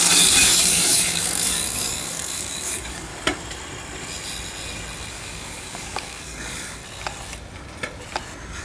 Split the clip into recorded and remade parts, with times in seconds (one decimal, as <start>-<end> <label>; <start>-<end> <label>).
0.0-3.1 remade; 3.1-5.1 recorded; 5.1-6.8 remade; 6.8-8.6 recorded